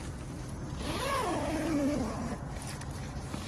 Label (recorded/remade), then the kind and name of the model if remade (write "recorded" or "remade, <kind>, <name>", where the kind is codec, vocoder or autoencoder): recorded